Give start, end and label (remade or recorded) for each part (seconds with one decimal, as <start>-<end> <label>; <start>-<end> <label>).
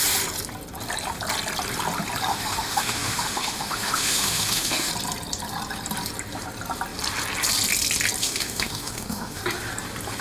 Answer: 0.0-2.3 recorded; 2.3-4.9 remade; 4.9-8.2 recorded; 8.2-9.4 remade; 9.4-10.2 recorded